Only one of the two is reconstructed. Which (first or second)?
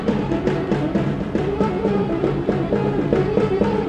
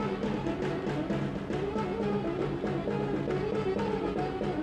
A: first